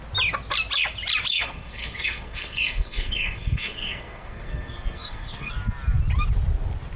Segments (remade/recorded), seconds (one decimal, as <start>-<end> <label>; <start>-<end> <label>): 0.0-1.3 recorded; 1.3-5.5 remade; 5.5-7.0 recorded

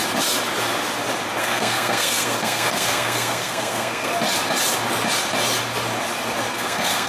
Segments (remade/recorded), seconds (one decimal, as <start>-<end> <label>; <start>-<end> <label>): 0.0-1.4 recorded; 1.4-4.1 remade; 4.1-6.5 recorded; 6.5-7.1 remade

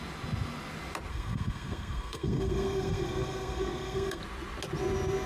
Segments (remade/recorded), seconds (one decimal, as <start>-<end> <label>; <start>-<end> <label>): 0.0-1.1 recorded; 1.1-4.2 remade; 4.2-5.3 recorded

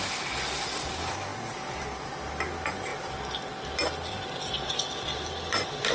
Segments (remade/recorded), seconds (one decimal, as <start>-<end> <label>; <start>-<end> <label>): 0.0-5.9 recorded

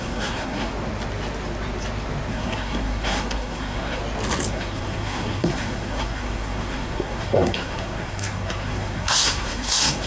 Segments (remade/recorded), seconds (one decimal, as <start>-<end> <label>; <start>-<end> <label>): 0.0-0.7 remade; 0.7-2.3 recorded; 2.3-4.0 remade; 4.0-4.5 recorded; 4.5-10.1 remade

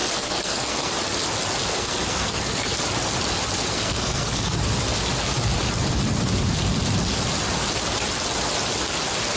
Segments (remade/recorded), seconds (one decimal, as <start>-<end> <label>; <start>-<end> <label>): 0.0-0.9 remade; 0.9-1.7 recorded; 1.7-2.7 remade; 2.7-3.6 recorded; 3.6-4.6 remade; 4.6-9.4 recorded

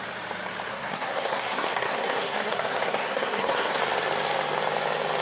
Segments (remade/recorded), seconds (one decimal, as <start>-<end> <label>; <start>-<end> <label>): 0.0-0.7 recorded; 0.7-3.8 remade; 3.8-5.2 recorded